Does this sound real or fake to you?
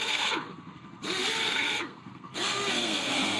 fake